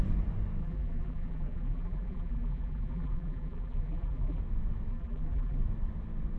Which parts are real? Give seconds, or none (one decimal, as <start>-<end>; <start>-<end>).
0.0-0.6; 4.4-4.9; 5.6-6.4